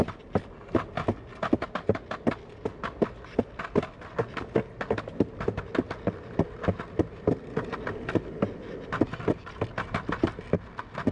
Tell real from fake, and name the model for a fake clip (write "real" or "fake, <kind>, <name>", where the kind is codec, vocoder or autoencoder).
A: real